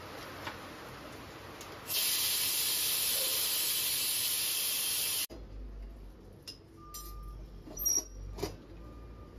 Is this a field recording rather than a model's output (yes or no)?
yes